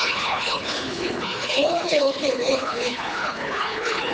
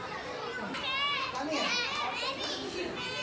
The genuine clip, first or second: second